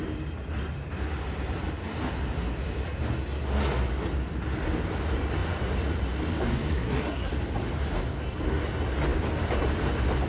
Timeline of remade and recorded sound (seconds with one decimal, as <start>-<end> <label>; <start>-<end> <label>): 0.0-6.7 recorded; 6.7-7.3 remade; 7.3-10.3 recorded